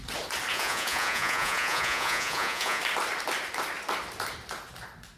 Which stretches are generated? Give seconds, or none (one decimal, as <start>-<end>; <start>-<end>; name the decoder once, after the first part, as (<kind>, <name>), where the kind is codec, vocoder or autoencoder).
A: 0.5-2.8 (vocoder, Vocos)